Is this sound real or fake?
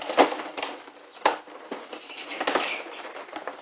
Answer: real